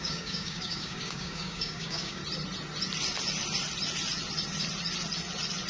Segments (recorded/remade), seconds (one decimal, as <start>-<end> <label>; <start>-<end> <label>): 0.0-2.2 remade; 2.2-5.7 recorded